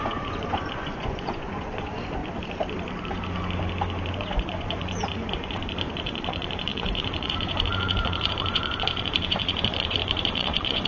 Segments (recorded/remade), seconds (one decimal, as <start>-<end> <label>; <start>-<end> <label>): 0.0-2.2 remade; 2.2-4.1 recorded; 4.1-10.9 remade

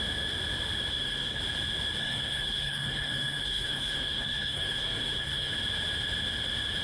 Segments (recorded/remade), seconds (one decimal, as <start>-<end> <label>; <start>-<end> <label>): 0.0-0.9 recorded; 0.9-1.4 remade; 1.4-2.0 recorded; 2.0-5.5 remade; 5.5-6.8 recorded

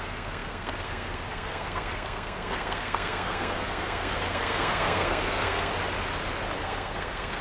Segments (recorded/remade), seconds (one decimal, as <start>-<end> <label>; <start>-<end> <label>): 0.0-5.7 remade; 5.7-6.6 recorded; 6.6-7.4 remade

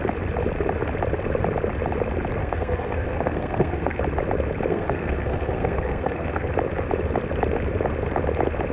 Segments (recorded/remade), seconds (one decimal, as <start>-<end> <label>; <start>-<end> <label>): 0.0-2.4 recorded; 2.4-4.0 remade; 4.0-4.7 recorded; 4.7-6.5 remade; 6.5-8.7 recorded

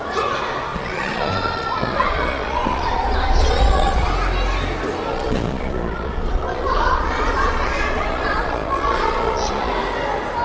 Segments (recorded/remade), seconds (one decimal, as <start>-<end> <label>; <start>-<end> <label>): 0.0-0.7 recorded; 0.7-4.1 remade; 4.1-5.1 recorded; 5.1-9.7 remade; 9.7-10.4 recorded

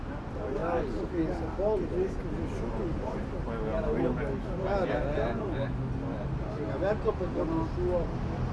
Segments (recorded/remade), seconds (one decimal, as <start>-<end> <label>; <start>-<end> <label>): 0.0-8.5 recorded

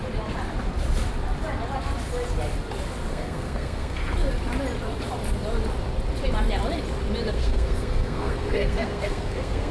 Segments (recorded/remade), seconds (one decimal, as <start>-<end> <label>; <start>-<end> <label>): 0.0-3.1 recorded; 3.1-4.0 remade; 4.0-7.3 recorded; 7.3-9.7 remade

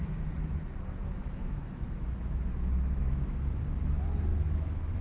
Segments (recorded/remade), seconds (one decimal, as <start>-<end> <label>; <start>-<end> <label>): 0.0-1.2 recorded; 1.2-3.6 remade; 3.6-4.3 recorded; 4.3-5.0 remade